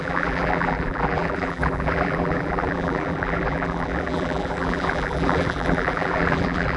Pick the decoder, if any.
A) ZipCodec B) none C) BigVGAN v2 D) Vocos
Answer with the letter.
C